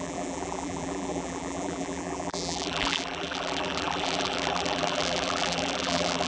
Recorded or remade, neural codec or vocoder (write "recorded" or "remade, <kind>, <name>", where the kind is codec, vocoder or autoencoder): remade, vocoder, BigVGAN v2